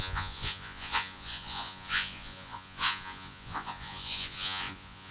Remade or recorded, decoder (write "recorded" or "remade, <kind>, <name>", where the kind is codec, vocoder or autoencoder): remade, vocoder, Vocos